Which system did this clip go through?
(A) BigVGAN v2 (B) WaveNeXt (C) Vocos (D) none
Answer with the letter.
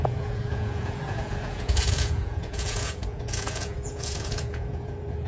C